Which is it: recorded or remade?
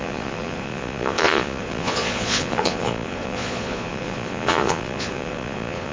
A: remade